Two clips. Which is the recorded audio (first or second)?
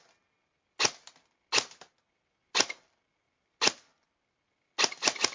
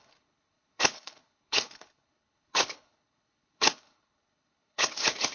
first